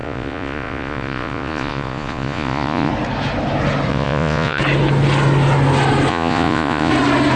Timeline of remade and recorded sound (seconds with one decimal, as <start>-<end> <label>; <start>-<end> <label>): 0.0-2.9 remade; 2.9-3.9 recorded; 3.9-4.6 remade; 4.6-6.1 recorded; 6.1-6.9 remade; 6.9-7.4 recorded